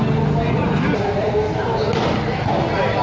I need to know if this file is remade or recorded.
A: recorded